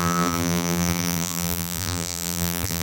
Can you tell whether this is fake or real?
fake